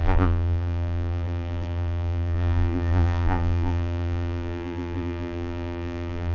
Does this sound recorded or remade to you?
remade